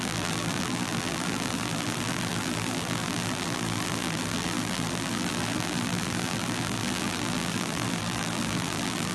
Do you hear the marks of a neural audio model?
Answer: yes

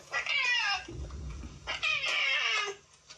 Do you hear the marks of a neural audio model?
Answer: no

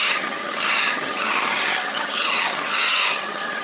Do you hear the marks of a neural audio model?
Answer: yes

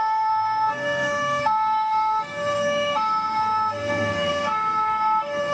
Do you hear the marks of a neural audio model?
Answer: yes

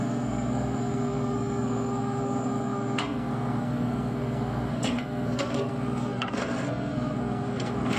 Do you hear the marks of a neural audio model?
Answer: yes